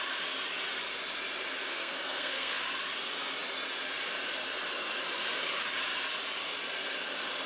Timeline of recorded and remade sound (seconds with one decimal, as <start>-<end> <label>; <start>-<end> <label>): 0.0-1.7 recorded; 1.7-2.6 remade; 2.6-7.5 recorded